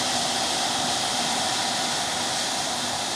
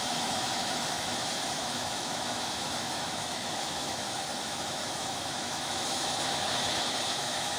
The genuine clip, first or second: first